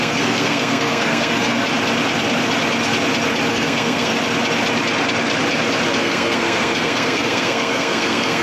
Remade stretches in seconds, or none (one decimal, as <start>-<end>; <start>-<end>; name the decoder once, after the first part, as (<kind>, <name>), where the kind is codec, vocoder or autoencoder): 0.0-1.6 (codec, SNAC); 3.5-4.1; 6.0-8.4